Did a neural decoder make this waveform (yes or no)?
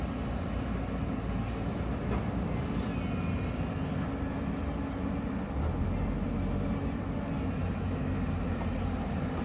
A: no